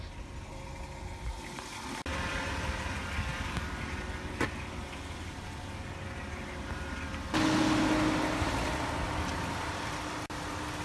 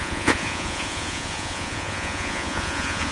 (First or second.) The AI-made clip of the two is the second